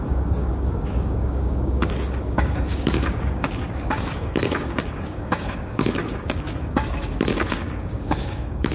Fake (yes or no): yes